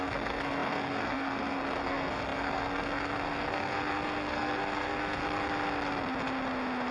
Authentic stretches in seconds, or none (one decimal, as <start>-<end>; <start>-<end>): 5.2-6.9